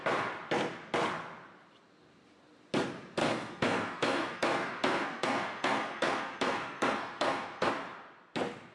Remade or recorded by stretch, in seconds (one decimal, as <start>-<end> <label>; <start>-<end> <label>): 0.0-3.2 recorded; 3.2-7.7 remade; 7.7-8.7 recorded